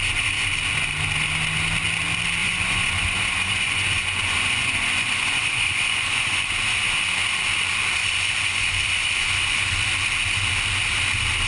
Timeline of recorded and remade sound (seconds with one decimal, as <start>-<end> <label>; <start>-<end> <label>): 0.0-2.4 recorded; 2.4-6.4 remade; 6.4-8.0 recorded; 8.0-9.7 remade; 9.7-11.5 recorded